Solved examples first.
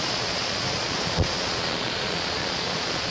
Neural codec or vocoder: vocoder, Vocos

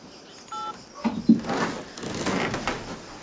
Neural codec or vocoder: none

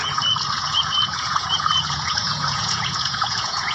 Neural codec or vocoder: vocoder, Vocos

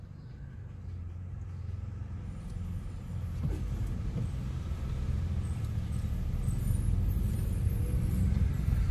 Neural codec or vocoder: none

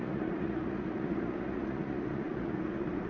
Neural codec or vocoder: vocoder, Vocos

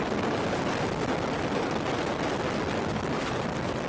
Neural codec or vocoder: none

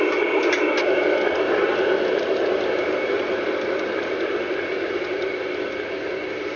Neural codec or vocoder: none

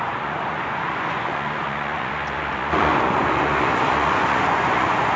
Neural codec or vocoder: vocoder, Vocos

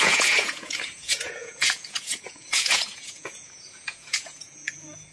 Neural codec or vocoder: vocoder, Vocos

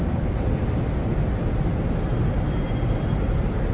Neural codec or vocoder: none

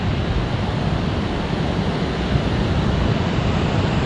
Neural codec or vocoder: none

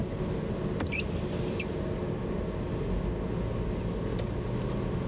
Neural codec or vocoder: none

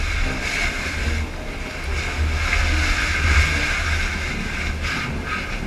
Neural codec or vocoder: none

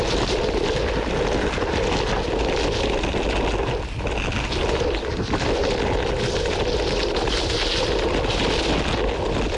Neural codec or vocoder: none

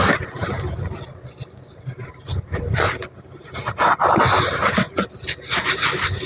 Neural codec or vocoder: none